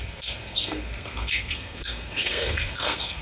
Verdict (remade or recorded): remade